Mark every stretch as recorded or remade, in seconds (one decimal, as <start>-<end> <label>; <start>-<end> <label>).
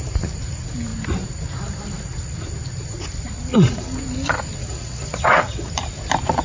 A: 0.0-3.5 recorded; 3.5-4.0 remade; 4.0-4.6 recorded; 4.6-5.7 remade; 5.7-6.4 recorded